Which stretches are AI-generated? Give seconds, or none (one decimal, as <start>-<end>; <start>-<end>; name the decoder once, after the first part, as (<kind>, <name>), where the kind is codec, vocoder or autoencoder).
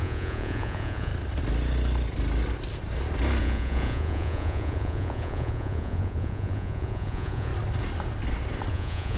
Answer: 0.0-1.1 (vocoder, Vocos); 3.4-7.5; 8.7-9.2